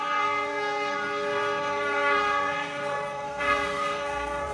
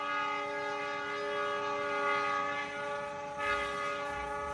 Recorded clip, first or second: second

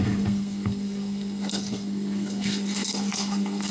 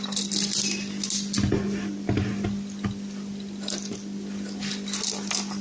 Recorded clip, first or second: second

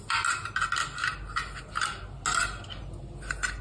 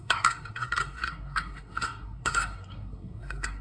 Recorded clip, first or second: first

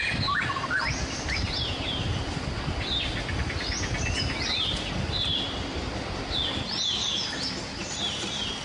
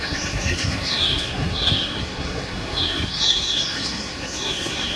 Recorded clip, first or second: first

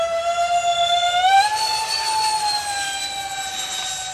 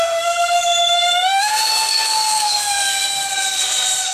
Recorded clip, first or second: first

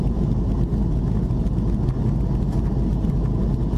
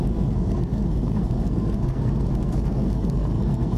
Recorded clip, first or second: first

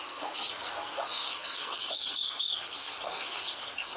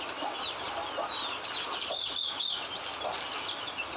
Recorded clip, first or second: second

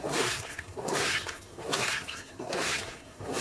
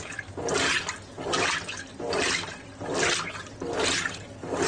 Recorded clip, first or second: second